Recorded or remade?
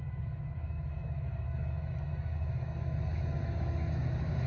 remade